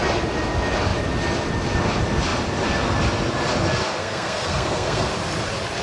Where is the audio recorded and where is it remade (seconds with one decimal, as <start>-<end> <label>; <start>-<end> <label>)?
0.0-4.0 recorded; 4.0-5.1 remade; 5.1-5.8 recorded